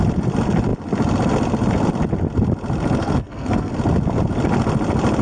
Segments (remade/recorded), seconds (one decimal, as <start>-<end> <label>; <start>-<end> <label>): 0.0-3.0 recorded; 3.0-3.7 remade; 3.7-5.2 recorded